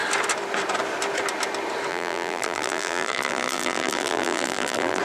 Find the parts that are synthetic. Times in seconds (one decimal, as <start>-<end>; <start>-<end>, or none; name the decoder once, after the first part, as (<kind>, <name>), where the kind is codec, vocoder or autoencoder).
1.9-5.0 (vocoder, BigVGAN v2)

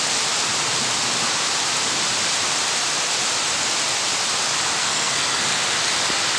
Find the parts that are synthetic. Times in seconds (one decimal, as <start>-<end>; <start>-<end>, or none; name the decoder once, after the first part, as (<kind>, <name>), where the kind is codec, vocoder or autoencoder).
4.8-5.4 (codec, SNAC)

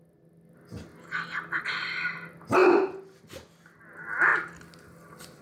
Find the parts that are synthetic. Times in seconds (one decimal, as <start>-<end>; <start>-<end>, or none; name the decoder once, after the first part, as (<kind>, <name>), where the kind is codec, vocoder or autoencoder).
none

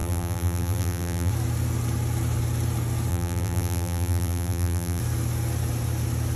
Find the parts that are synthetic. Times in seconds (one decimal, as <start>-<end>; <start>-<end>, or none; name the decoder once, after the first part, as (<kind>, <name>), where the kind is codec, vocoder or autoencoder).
0.0-1.3 (vocoder, BigVGAN v2); 3.1-5.0

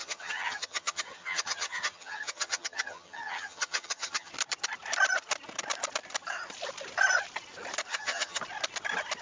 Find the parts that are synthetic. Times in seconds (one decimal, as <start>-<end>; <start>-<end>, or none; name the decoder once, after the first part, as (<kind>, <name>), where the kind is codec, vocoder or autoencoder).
0.0-4.3 (vocoder, HiFi-GAN); 7.9-8.4